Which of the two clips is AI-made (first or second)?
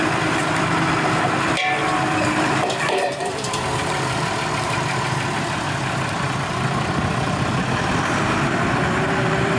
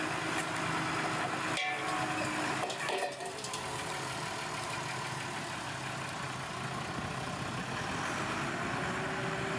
first